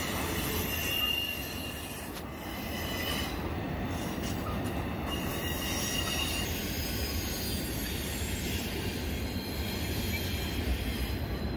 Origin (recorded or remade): recorded